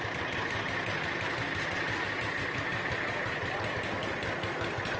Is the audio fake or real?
real